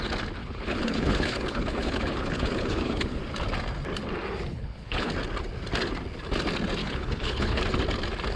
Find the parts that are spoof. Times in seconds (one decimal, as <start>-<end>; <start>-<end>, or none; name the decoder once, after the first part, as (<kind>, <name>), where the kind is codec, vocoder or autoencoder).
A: 0.4-3.2 (codec, HILCodec); 4.5-5.1; 6.8-7.6